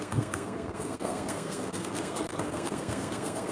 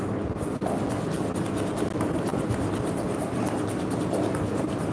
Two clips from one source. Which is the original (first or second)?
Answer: second